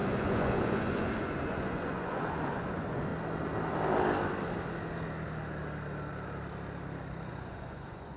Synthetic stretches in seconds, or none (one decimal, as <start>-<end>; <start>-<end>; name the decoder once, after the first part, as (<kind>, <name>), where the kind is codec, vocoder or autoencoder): 0.0-3.1 (vocoder, Vocos); 7.3-8.2